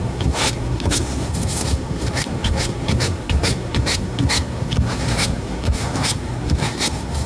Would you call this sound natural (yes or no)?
no